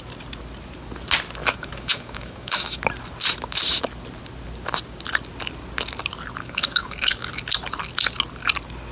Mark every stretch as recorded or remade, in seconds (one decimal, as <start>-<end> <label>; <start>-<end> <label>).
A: 0.0-1.4 recorded; 1.4-2.8 remade; 2.8-6.4 recorded; 6.4-7.3 remade; 7.3-8.9 recorded